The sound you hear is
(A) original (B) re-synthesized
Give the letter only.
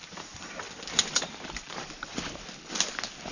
A